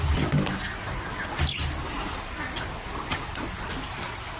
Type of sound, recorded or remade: recorded